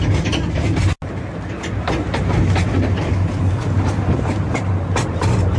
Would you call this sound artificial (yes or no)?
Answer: no